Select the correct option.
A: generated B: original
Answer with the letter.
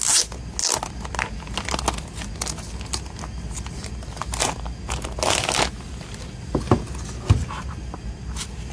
B